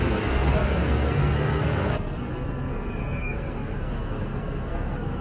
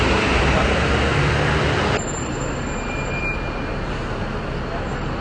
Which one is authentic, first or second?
second